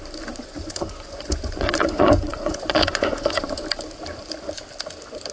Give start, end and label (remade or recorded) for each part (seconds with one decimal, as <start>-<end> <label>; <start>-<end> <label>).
0.0-0.4 recorded; 0.4-3.6 remade; 3.6-5.3 recorded